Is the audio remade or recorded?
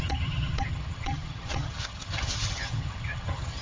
remade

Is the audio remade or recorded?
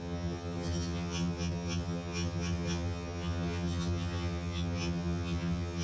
remade